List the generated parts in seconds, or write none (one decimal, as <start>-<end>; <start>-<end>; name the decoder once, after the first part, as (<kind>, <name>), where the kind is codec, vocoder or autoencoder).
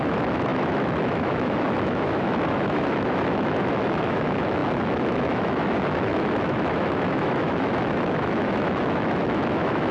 0.0-9.9 (autoencoder, DAC-VAE)